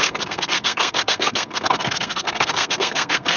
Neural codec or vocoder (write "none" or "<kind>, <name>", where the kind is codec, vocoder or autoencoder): codec, SNAC